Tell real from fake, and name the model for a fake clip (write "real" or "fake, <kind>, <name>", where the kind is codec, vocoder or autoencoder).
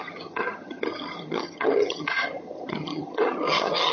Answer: fake, vocoder, HiFi-GAN